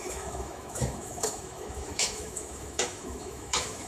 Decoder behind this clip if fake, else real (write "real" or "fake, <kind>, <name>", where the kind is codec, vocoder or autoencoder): fake, autoencoder, DAC-VAE